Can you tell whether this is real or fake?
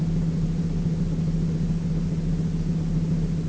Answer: real